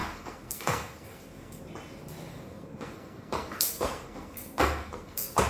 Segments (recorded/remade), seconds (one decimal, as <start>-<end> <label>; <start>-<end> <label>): 0.0-1.6 remade; 1.6-2.3 recorded; 2.3-5.5 remade